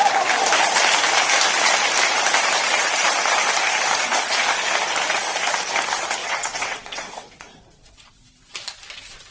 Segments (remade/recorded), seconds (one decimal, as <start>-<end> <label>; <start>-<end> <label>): 0.0-6.2 recorded; 6.2-7.6 remade; 7.6-9.3 recorded

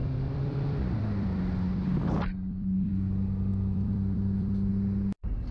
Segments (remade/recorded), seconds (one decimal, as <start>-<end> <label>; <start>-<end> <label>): 0.0-2.9 remade; 2.9-3.5 recorded; 3.5-4.7 remade; 4.7-5.5 recorded

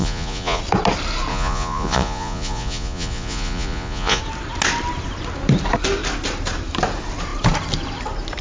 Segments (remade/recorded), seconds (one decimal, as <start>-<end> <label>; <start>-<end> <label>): 0.0-0.6 remade; 0.6-1.3 recorded; 1.3-4.2 remade; 4.2-8.4 recorded

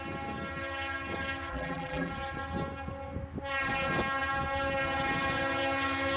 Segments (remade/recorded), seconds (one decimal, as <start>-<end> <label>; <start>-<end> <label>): 0.0-1.5 recorded; 1.5-2.1 remade; 2.1-6.2 recorded

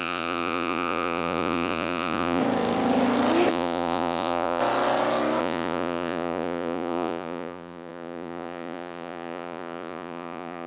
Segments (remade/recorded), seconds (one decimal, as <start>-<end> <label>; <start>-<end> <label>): 0.0-2.4 remade; 2.4-3.5 recorded; 3.5-4.6 remade; 4.6-5.4 recorded; 5.4-10.7 remade

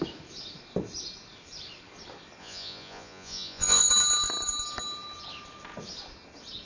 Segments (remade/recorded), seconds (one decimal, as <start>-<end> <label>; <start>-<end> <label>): 0.0-2.4 recorded; 2.4-3.9 remade; 3.9-6.7 recorded

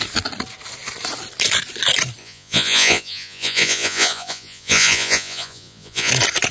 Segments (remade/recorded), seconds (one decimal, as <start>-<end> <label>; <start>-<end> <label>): 0.0-2.2 recorded; 2.2-6.1 remade; 6.1-6.5 recorded